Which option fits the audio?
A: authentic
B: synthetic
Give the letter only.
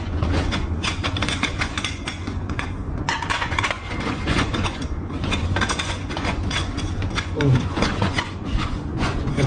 B